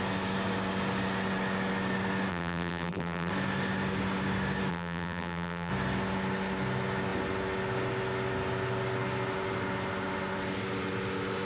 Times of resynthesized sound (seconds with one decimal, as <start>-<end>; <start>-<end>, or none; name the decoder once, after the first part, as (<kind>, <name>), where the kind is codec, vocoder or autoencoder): 2.3-3.3 (vocoder, BigVGAN v2); 4.7-5.7